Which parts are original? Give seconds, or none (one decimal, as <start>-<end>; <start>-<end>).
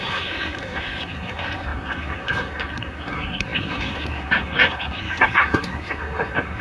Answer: none